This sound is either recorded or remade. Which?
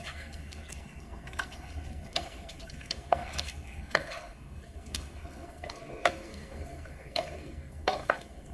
remade